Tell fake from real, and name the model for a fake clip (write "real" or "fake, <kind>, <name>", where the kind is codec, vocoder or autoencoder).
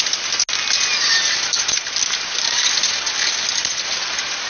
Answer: real